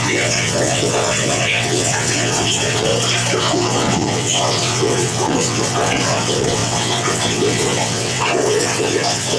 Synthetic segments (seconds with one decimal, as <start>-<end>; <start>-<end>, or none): 0.0-2.9; 3.4-9.4